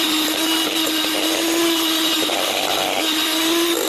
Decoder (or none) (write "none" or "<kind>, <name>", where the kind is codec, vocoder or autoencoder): none